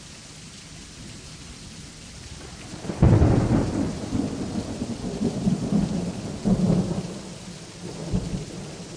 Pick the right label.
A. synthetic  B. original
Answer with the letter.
B